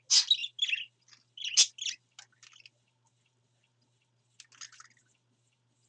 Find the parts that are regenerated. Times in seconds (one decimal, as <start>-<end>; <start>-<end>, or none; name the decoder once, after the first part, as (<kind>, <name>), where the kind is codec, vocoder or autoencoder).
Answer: none